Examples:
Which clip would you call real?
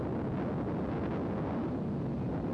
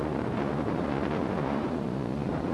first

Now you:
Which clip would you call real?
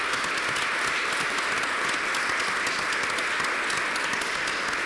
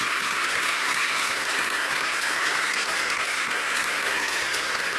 first